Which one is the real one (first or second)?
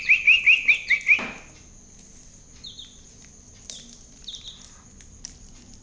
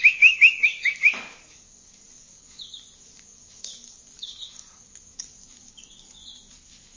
first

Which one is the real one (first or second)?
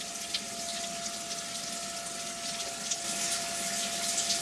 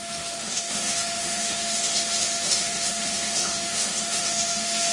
first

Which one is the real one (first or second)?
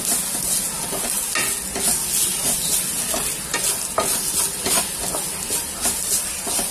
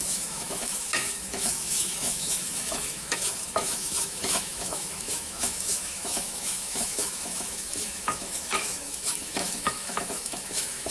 first